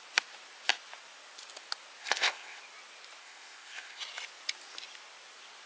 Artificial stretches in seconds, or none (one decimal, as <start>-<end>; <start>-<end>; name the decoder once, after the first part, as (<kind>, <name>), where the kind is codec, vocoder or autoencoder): 2.0-2.6 (codec, ZipCodec); 3.2-4.0